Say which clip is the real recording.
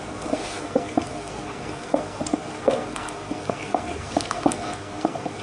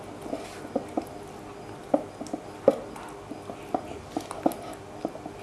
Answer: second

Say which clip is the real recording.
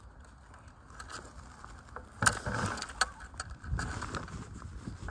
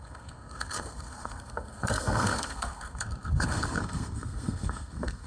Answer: first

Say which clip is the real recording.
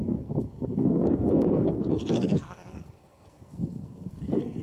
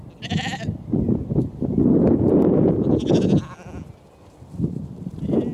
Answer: second